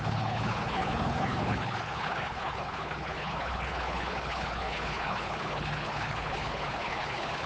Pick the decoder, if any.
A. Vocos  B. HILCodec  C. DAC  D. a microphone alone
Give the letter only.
B